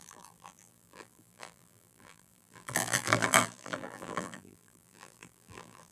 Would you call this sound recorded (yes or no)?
no